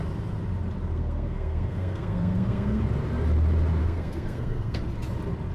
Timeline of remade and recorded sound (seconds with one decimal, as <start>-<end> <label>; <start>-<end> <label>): 0.0-0.8 recorded; 0.8-2.8 remade; 2.8-3.8 recorded; 3.8-4.8 remade; 4.8-5.5 recorded